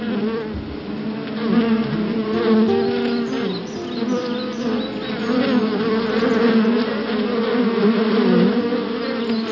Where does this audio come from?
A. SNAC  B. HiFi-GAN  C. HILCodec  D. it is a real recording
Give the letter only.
D